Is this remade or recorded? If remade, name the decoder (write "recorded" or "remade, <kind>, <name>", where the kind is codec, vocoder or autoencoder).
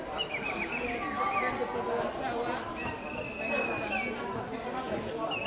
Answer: recorded